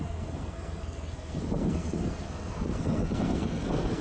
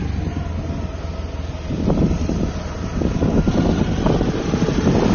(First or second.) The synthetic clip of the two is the first